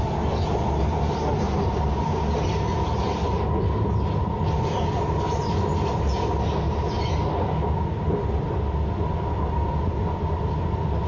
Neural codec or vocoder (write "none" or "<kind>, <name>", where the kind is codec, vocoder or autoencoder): none